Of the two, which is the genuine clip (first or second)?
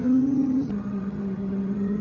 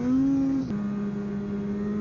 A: second